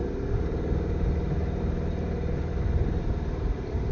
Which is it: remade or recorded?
recorded